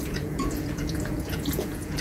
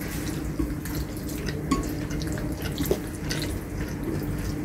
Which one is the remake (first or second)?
first